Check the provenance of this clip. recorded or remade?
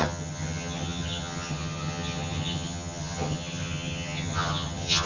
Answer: remade